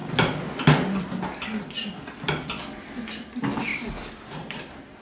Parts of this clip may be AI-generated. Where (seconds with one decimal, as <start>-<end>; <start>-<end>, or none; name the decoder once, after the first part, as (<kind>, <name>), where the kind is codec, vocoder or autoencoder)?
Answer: 3.7-4.6 (vocoder, BigVGAN v2)